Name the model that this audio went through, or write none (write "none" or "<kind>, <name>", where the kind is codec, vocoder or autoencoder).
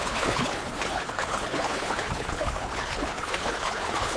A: codec, HILCodec